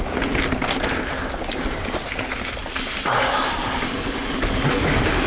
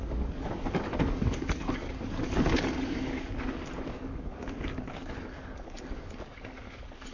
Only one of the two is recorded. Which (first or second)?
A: first